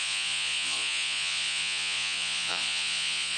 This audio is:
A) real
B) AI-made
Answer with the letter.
B